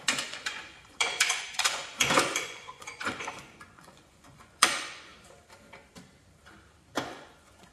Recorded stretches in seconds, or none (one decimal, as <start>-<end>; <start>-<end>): 5.1-7.0